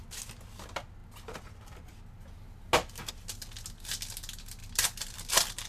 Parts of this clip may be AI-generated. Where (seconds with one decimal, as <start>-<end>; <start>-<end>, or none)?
4.6-5.3